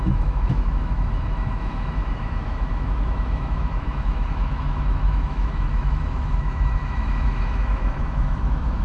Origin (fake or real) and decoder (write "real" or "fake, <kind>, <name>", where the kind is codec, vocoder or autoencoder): fake, autoencoder, DAC-VAE